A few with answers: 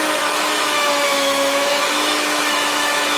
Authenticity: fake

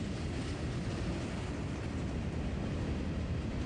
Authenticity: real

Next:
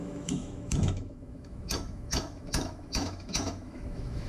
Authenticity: fake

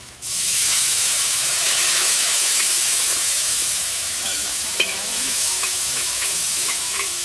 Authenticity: fake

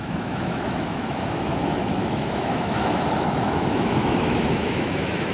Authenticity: fake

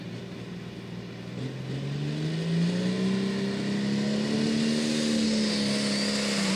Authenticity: real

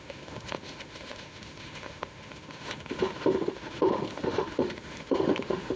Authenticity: fake